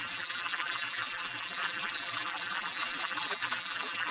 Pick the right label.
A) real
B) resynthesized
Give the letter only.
B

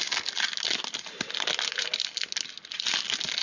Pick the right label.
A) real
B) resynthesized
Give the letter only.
A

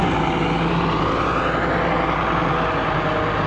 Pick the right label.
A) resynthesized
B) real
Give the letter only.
B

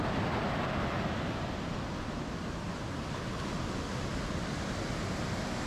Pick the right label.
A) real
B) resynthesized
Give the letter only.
A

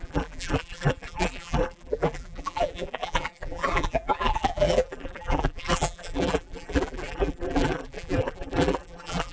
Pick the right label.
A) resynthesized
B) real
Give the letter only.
A